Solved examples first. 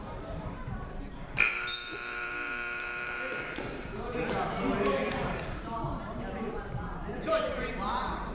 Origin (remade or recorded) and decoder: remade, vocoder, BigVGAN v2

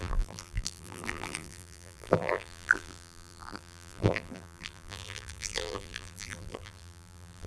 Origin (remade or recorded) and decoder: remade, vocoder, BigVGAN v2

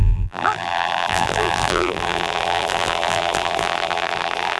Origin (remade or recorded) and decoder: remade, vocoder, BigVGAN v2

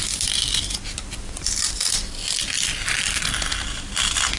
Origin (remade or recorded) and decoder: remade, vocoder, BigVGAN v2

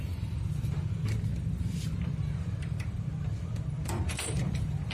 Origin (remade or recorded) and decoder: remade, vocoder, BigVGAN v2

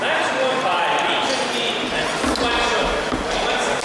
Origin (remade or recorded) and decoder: recorded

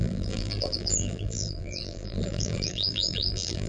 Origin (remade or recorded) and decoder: remade, vocoder, BigVGAN v2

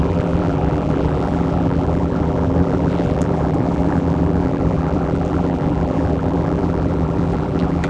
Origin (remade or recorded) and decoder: remade, vocoder, BigVGAN v2